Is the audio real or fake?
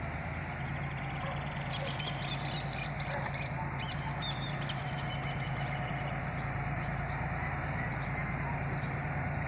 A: fake